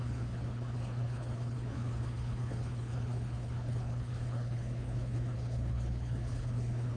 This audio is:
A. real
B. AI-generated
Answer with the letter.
B